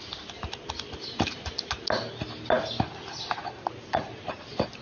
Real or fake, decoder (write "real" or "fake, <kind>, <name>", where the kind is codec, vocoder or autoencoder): real